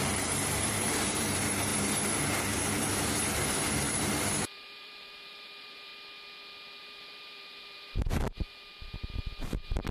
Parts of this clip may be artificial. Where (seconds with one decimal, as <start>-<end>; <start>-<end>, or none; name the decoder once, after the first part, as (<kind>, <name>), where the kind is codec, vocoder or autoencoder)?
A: 0.0-1.7 (vocoder, BigVGAN v2); 4.4-5.9; 6.8-8.7